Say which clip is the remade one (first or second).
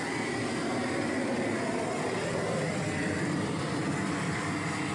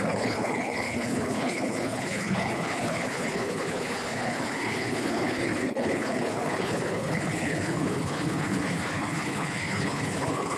second